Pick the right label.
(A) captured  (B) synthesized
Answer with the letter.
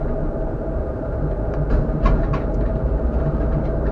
B